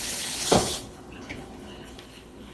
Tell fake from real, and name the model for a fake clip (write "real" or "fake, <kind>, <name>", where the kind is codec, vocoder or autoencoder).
fake, codec, HILCodec